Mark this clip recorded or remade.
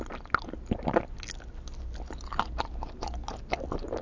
recorded